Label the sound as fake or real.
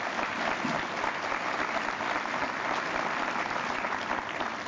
real